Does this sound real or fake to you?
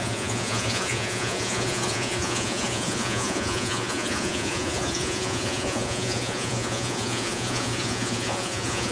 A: fake